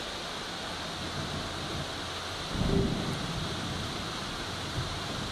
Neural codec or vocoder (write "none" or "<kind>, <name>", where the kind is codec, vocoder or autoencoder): none